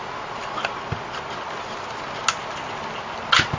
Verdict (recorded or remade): recorded